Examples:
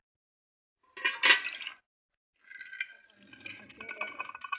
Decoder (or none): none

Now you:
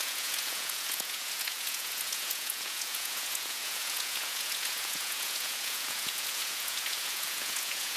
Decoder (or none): vocoder, Vocos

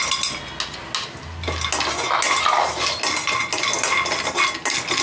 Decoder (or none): none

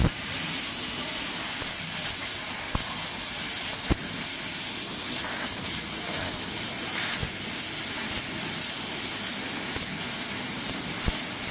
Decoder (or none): none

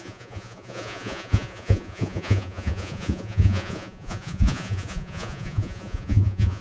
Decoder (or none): vocoder, Vocos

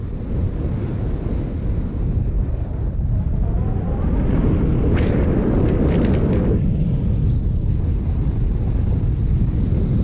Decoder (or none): none